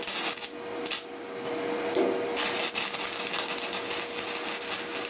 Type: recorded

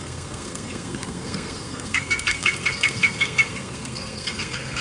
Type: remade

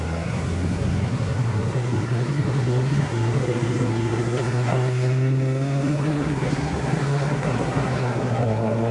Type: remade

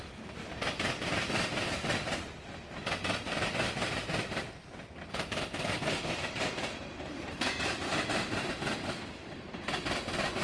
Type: remade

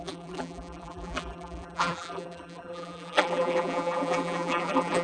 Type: remade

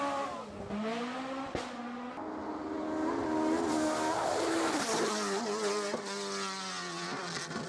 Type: recorded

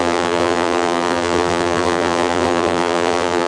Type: remade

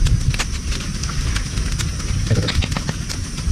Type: recorded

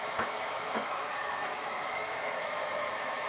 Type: remade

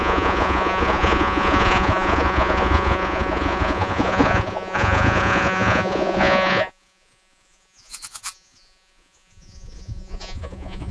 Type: remade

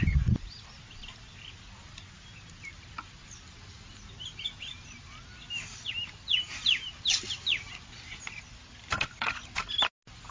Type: recorded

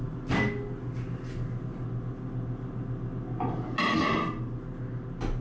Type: recorded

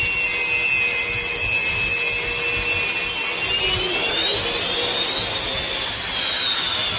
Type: recorded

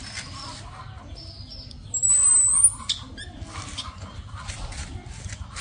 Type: recorded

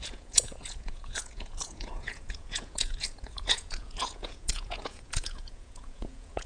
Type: remade